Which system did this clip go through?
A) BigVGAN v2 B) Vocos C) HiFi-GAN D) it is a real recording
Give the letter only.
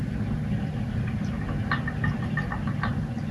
D